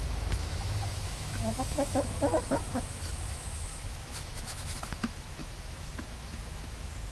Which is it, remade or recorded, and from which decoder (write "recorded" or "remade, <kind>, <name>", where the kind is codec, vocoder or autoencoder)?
remade, autoencoder, DAC-VAE